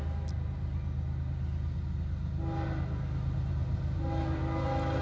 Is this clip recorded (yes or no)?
yes